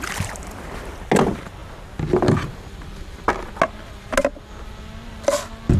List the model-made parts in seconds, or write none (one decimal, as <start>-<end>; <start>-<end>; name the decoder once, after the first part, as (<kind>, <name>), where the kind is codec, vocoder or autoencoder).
none